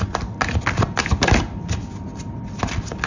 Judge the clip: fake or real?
real